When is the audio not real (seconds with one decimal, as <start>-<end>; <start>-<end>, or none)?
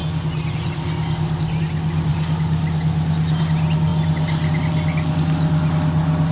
none